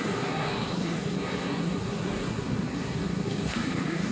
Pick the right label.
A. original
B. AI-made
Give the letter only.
B